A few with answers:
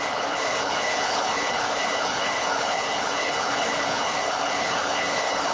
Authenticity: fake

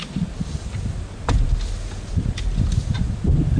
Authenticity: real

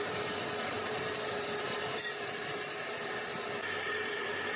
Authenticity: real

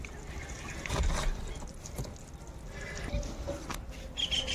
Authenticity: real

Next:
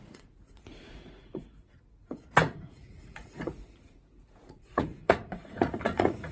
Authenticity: fake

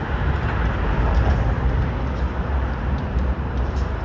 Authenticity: real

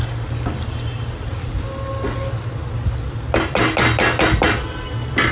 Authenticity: real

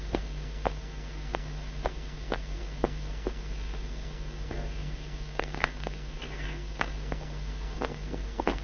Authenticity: fake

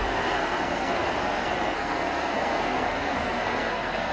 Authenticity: fake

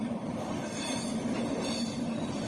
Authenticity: real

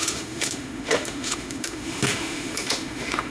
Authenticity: fake